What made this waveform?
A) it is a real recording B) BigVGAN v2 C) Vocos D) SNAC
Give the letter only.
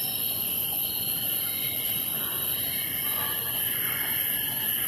C